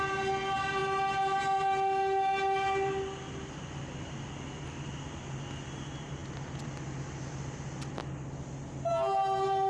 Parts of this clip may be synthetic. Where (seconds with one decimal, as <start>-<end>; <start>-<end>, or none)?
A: none